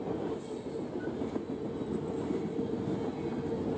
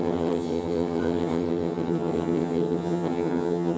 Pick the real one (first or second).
first